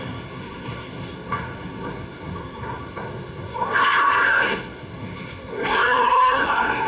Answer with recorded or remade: remade